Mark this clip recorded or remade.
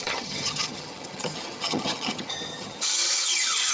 remade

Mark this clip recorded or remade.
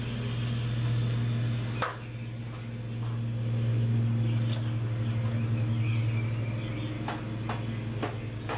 recorded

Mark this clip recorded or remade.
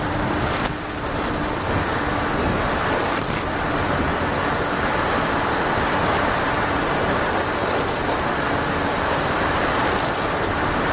recorded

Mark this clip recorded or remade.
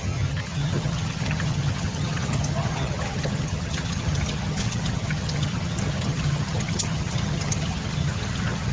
remade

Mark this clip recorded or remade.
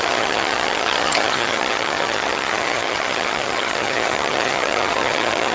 remade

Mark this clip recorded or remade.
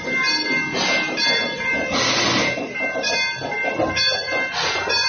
recorded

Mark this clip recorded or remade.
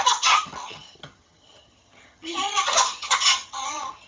remade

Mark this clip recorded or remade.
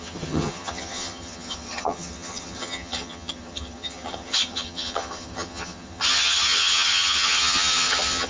remade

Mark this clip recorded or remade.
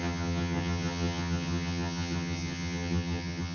remade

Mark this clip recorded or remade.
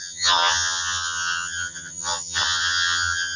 remade